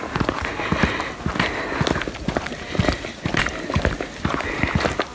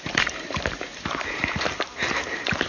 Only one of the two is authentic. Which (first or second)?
first